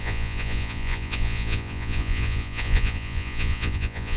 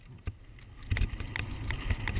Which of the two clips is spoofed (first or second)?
first